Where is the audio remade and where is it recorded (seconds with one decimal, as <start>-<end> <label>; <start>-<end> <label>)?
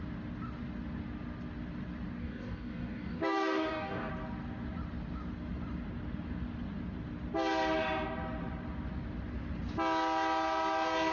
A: 0.0-2.2 recorded; 2.2-4.1 remade; 4.1-11.1 recorded